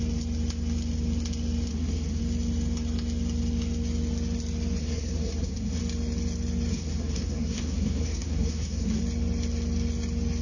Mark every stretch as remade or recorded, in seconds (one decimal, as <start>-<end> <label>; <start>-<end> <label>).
0.0-1.7 recorded; 1.7-2.2 remade; 2.2-4.8 recorded; 4.8-5.8 remade; 5.8-6.7 recorded; 6.7-9.0 remade; 9.0-10.4 recorded